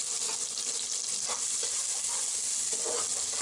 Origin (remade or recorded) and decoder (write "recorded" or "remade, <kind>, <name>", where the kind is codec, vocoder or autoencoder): recorded